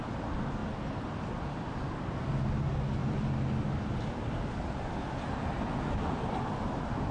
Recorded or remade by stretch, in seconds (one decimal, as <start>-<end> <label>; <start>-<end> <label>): 0.0-7.1 recorded